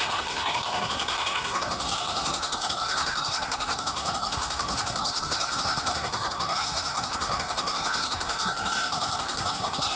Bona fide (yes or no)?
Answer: no